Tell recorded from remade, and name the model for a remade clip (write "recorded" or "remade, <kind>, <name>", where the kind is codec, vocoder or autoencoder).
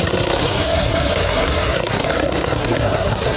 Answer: remade, codec, SNAC